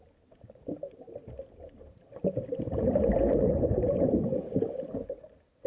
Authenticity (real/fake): real